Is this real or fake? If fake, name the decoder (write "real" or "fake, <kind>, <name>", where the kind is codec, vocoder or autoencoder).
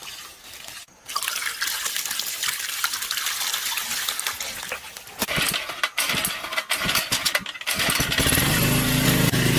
real